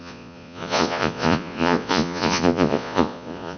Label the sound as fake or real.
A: fake